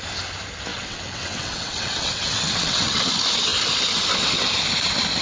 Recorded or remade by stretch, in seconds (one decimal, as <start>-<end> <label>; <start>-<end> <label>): 0.0-0.7 recorded; 0.7-3.0 remade; 3.0-5.2 recorded